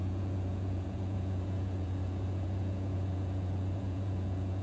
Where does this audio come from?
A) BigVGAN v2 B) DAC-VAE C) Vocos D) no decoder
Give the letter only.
C